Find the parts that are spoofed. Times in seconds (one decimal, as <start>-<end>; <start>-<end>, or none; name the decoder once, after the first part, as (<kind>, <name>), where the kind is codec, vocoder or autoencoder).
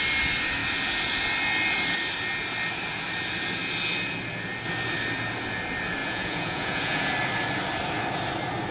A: 6.0-7.1 (vocoder, Vocos)